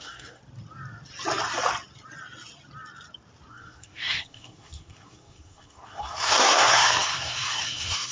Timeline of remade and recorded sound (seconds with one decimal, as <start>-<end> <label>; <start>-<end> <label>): 0.0-0.4 remade; 0.4-3.5 recorded; 3.5-8.1 remade